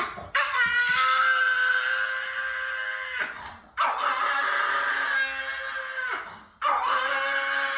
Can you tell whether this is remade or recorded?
recorded